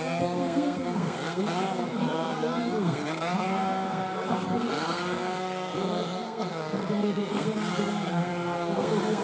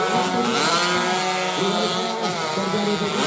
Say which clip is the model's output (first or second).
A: first